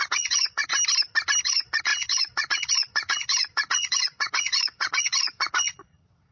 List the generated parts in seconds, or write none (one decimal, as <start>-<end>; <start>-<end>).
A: 0.0-0.7; 1.4-6.3